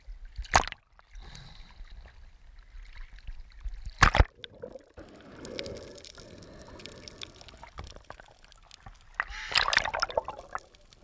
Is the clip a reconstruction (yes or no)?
no